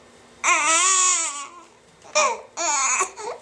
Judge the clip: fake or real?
real